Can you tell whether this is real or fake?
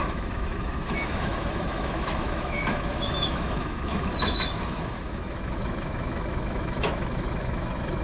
fake